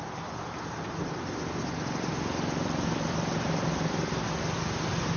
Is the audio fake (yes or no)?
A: no